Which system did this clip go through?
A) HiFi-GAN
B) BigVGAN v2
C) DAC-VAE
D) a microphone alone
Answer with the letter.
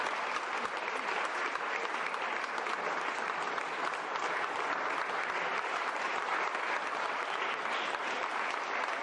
D